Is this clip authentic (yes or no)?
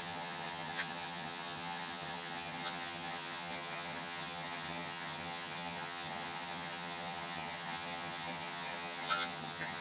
no